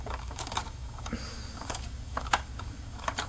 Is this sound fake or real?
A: fake